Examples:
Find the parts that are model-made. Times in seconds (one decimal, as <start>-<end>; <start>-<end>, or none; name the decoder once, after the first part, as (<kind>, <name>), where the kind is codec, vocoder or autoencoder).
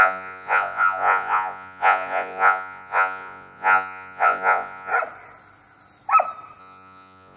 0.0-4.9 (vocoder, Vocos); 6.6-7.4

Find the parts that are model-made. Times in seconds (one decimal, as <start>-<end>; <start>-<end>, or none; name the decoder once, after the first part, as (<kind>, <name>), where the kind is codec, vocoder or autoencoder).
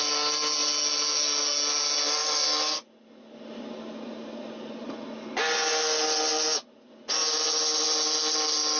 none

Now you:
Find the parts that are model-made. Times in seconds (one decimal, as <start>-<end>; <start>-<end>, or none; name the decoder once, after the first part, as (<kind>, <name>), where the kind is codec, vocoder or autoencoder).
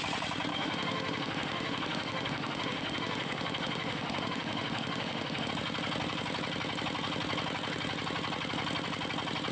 0.5-5.5 (autoencoder, DAC-VAE)